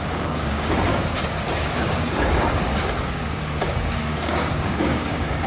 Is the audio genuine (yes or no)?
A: no